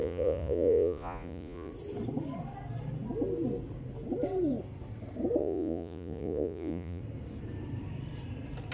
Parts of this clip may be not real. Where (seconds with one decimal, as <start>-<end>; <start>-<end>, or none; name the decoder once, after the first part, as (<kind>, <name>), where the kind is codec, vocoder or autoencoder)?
0.0-1.7 (vocoder, Vocos); 5.4-7.0